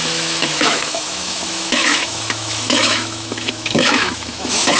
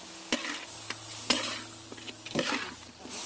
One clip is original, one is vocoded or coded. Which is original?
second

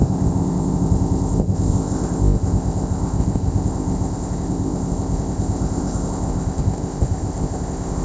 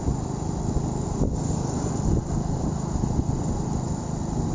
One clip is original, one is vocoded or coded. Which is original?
second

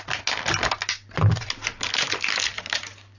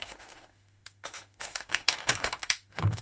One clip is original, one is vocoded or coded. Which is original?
first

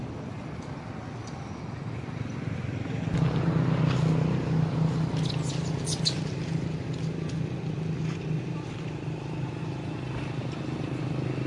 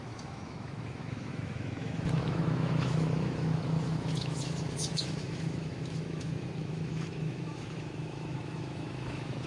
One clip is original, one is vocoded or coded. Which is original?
first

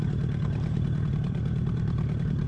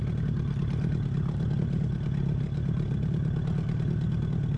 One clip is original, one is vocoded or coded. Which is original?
second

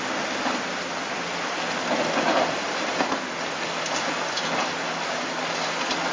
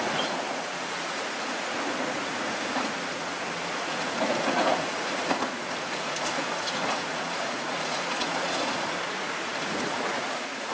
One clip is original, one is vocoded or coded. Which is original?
first